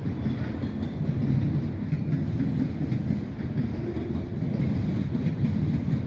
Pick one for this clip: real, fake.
real